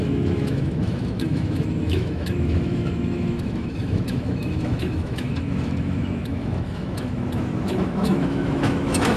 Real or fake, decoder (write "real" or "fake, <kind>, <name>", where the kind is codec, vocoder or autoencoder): fake, autoencoder, DAC-VAE